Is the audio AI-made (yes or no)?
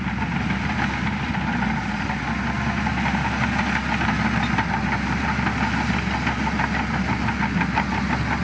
no